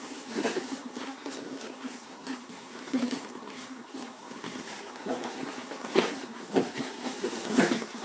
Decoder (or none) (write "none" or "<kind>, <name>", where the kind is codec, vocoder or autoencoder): codec, SNAC